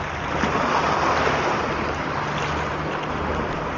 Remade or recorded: recorded